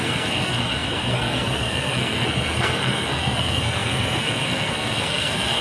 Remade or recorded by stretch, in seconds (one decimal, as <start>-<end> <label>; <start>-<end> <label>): 0.0-5.6 remade